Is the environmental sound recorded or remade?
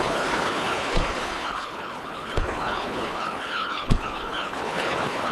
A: remade